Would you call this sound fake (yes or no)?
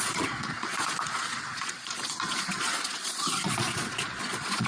yes